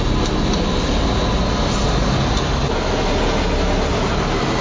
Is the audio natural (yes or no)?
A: yes